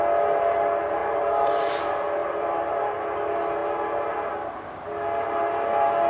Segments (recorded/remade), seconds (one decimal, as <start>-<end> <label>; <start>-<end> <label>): 0.0-1.0 recorded; 1.0-1.7 remade; 1.7-2.2 recorded; 2.2-2.7 remade; 2.7-6.1 recorded